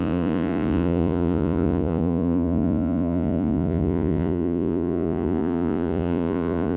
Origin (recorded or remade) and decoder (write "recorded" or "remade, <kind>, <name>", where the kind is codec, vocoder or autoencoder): remade, vocoder, Vocos